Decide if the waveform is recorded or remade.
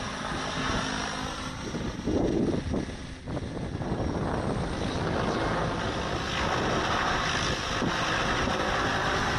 recorded